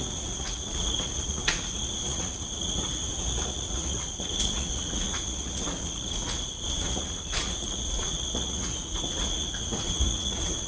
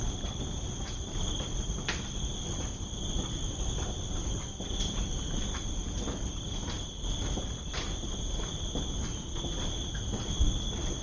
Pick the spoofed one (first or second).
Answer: first